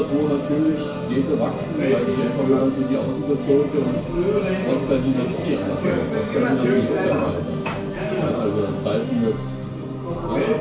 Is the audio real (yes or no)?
yes